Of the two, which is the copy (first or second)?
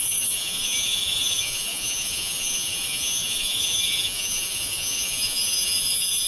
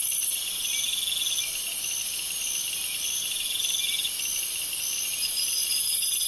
first